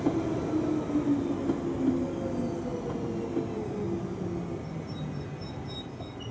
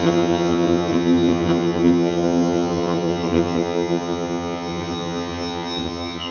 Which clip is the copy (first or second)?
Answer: second